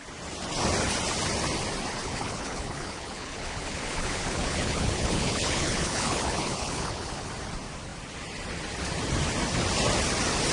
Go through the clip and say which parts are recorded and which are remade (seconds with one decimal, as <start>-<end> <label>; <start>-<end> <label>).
0.0-2.0 recorded; 2.0-7.3 remade; 7.3-10.5 recorded